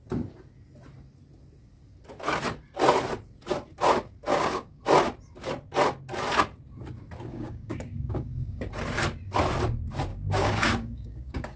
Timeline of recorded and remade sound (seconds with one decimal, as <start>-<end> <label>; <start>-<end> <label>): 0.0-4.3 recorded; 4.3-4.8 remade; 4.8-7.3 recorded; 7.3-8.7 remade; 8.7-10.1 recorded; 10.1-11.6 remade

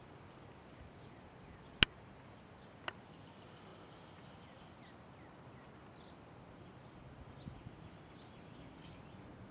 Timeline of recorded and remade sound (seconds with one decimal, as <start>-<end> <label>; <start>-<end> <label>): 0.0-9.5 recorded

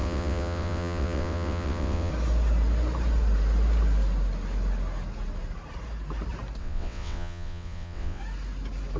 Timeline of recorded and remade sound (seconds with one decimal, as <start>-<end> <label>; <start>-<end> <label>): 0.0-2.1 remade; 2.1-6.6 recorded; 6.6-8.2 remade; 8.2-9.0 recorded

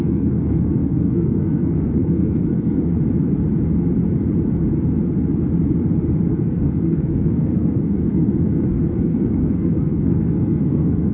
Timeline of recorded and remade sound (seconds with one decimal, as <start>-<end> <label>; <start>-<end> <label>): 0.0-2.9 remade; 2.9-6.3 recorded; 6.3-11.1 remade

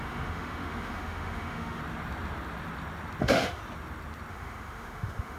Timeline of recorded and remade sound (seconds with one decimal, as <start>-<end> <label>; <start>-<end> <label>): 0.0-1.8 remade; 1.8-3.2 recorded; 3.2-3.6 remade; 3.6-4.3 recorded; 4.3-5.4 remade

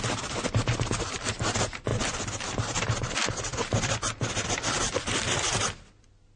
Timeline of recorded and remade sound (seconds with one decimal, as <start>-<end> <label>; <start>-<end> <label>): 0.0-6.4 recorded

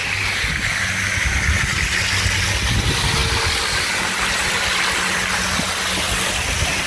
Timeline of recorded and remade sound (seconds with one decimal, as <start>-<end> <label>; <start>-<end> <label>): 0.0-6.9 recorded

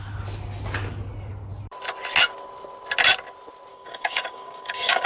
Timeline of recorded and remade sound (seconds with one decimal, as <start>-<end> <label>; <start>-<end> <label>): 0.0-3.7 recorded; 3.7-5.1 remade